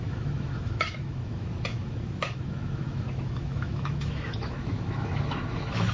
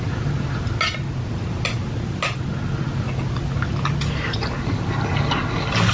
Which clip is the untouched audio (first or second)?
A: second